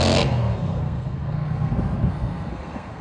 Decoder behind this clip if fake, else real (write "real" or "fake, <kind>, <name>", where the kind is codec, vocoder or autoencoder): fake, codec, SNAC